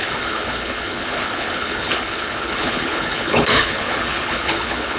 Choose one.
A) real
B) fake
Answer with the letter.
B